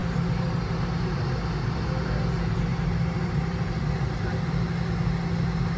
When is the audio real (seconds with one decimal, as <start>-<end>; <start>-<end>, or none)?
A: 1.1-2.7; 3.9-5.8